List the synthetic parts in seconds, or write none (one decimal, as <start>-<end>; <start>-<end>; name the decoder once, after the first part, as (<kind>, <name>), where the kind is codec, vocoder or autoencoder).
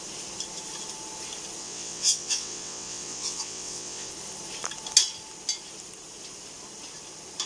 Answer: 1.6-4.1 (vocoder, WaveNeXt)